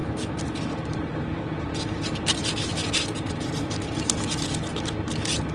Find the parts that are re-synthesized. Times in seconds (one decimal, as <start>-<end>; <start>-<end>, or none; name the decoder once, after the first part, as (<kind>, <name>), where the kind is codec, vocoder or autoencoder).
none